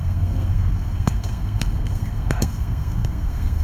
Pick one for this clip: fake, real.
fake